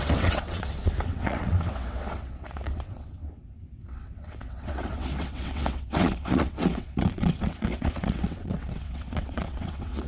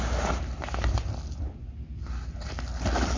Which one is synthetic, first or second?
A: first